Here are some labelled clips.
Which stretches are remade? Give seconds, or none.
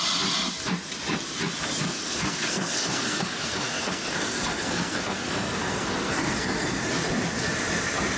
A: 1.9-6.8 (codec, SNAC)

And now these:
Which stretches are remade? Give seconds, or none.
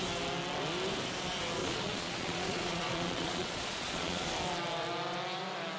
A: 1.6-4.3 (vocoder, Vocos)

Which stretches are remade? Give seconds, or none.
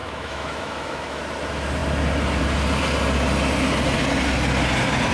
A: 0.0-1.2 (autoencoder, DAC-VAE)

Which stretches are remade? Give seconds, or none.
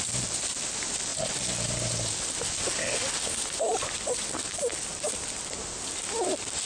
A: none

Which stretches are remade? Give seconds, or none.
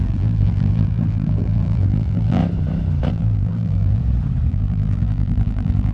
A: 0.0-2.4 (vocoder, BigVGAN v2); 3.1-4.0; 4.5-5.9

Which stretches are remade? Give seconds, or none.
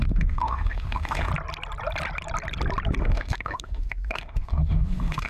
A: 0.0-1.3 (autoencoder, DAC-VAE); 3.0-5.3